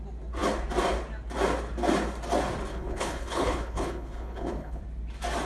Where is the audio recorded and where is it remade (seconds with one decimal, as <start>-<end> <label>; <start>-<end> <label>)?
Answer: 0.0-2.7 recorded; 2.7-4.8 remade; 4.8-5.5 recorded